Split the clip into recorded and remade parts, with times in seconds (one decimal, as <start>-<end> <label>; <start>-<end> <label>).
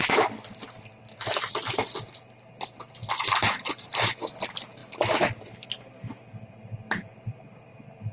0.0-3.0 recorded; 3.0-4.1 remade; 4.1-8.1 recorded